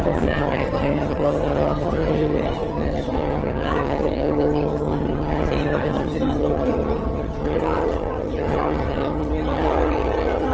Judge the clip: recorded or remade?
remade